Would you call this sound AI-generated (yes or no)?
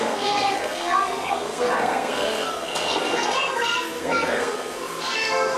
yes